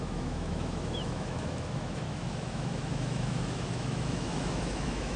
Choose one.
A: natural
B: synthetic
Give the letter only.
B